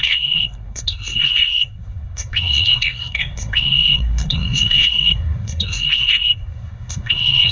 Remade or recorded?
remade